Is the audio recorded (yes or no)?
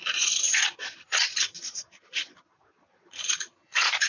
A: no